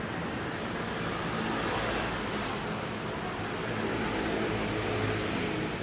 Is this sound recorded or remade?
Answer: recorded